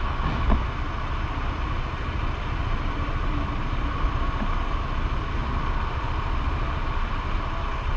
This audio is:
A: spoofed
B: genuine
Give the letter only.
B